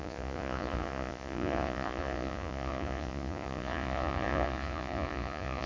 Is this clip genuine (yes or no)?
no